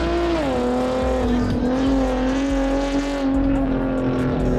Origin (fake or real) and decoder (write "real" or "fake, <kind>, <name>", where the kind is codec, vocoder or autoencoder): real